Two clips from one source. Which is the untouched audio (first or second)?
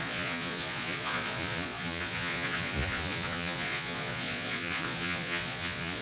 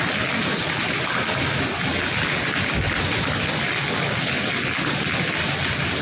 second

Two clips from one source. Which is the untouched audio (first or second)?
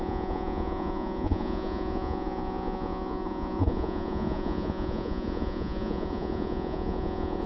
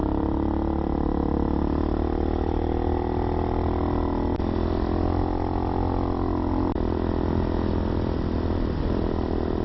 second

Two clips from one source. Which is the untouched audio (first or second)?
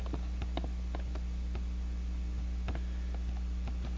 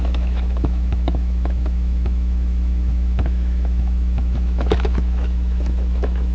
first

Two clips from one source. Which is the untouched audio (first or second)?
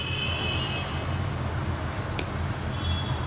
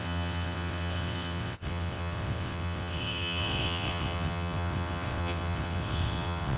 first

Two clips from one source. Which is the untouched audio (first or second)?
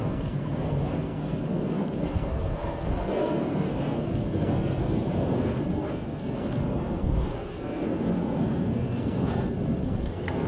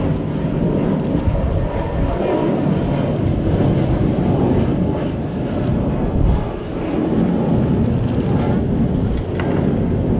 second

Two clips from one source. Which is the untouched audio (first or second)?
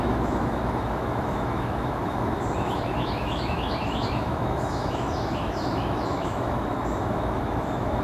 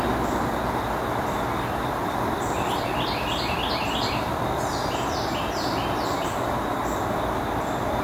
second